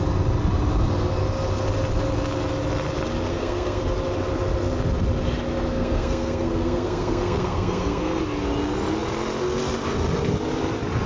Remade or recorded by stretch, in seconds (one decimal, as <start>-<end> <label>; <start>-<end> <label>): 0.0-3.3 recorded; 3.3-3.8 remade; 3.8-5.7 recorded; 5.7-8.2 remade; 8.2-11.1 recorded